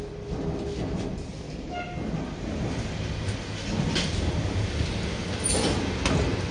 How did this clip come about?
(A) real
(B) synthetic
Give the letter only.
A